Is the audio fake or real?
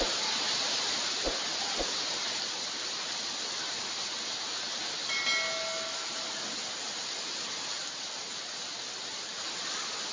real